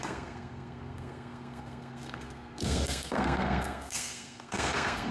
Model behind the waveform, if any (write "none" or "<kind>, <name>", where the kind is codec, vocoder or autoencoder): codec, SNAC